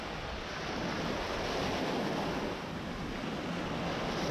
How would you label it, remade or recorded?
recorded